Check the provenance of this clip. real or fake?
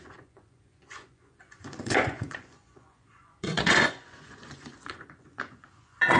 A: fake